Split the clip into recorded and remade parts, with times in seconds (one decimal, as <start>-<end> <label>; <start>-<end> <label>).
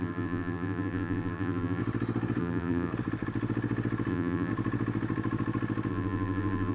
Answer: 0.0-1.8 remade; 1.8-2.4 recorded; 2.4-2.9 remade; 2.9-4.1 recorded; 4.1-4.5 remade; 4.5-5.9 recorded; 5.9-6.7 remade